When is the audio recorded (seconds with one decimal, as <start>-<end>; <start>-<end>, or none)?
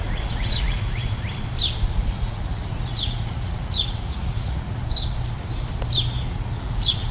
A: 1.0-1.8; 4.8-6.3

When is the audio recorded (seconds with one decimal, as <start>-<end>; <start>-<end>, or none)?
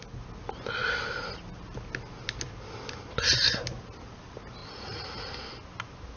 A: 0.0-4.6; 5.3-6.2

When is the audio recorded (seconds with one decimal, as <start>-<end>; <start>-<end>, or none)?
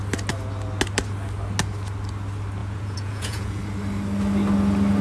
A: 0.0-2.6; 3.6-5.0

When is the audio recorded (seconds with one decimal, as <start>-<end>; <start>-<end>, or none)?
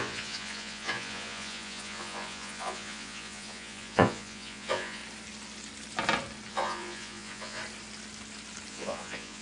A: 5.0-6.5; 7.6-8.7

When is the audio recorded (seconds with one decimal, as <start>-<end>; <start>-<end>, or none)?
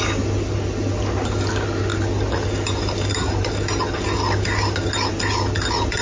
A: 0.0-6.0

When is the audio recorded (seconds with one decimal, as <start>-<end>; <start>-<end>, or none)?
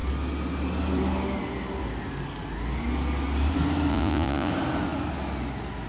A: 0.0-3.9; 4.5-5.9